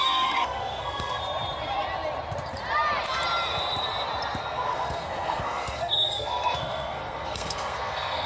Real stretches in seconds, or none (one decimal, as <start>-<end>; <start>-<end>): 1.2-4.4